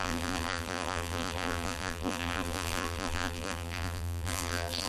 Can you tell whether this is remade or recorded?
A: remade